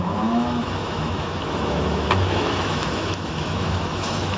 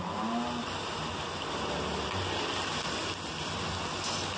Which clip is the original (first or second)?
second